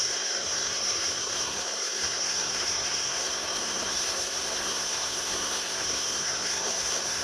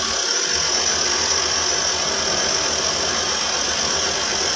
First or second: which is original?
second